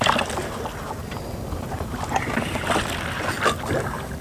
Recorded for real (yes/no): yes